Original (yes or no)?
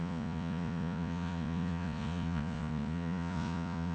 no